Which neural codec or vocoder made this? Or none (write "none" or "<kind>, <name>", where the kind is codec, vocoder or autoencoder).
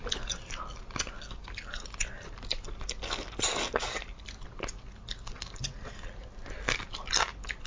none